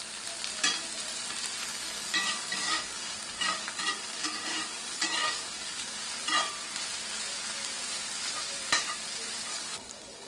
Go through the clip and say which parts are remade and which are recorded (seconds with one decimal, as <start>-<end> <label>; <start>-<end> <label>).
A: 0.0-1.7 recorded; 1.7-6.0 remade; 6.0-9.5 recorded; 9.5-10.3 remade

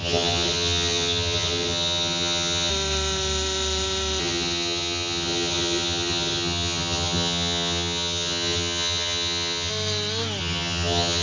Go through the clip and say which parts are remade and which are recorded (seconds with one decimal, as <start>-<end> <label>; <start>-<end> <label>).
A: 0.0-2.7 remade; 2.7-4.2 recorded; 4.2-9.7 remade; 9.7-10.4 recorded; 10.4-11.2 remade

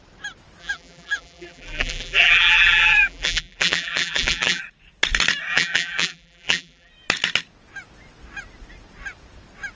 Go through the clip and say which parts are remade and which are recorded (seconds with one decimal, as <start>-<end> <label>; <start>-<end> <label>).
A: 0.0-0.6 recorded; 0.6-4.6 remade; 4.6-5.5 recorded; 5.5-6.9 remade; 6.9-9.8 recorded

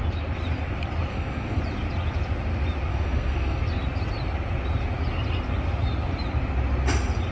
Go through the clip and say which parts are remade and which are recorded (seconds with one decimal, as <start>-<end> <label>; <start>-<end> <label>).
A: 0.0-1.1 recorded; 1.1-1.6 remade; 1.6-2.9 recorded; 2.9-3.6 remade; 3.6-7.3 recorded

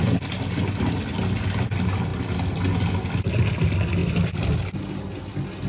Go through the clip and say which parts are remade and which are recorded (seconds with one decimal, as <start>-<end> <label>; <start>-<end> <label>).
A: 0.0-5.7 recorded

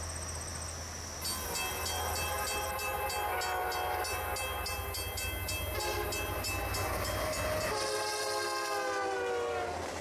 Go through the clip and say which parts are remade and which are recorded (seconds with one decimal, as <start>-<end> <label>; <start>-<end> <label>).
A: 0.0-10.0 recorded

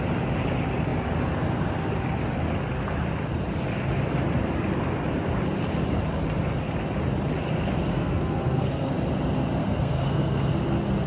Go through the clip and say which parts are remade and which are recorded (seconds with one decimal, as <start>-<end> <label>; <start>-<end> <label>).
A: 0.0-7.9 recorded; 7.9-8.9 remade; 8.9-9.6 recorded; 9.6-10.5 remade; 10.5-11.1 recorded